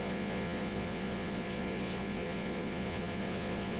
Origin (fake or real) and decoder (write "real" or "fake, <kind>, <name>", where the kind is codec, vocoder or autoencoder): fake, vocoder, Vocos